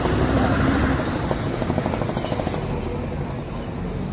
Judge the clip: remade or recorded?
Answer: recorded